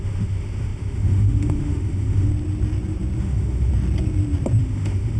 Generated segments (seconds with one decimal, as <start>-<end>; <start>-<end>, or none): 0.0-2.3; 3.2-3.7; 4.6-5.2

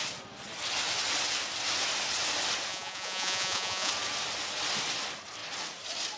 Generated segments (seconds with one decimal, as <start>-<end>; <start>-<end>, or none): 2.7-3.9

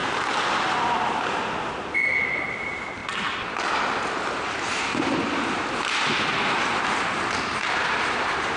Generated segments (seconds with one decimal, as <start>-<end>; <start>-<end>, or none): 2.2-3.0; 7.8-8.6

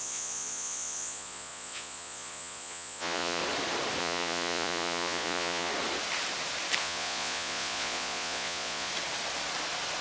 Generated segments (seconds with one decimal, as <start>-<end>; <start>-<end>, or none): 0.0-3.4; 4.0-5.7; 6.8-8.9

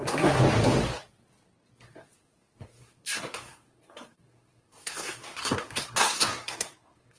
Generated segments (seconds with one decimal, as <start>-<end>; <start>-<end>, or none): 0.0-0.4; 1.8-7.2

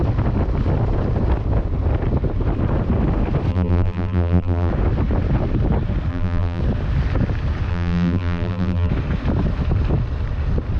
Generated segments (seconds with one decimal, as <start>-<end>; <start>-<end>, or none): 3.5-4.7; 6.1-6.6; 7.7-8.9